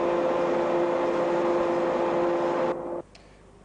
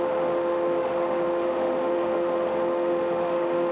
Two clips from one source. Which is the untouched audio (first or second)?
first